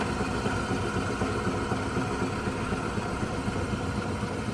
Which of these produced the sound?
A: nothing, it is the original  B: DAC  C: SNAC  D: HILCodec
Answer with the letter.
A